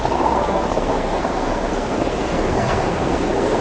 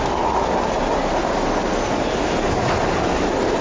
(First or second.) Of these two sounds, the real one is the second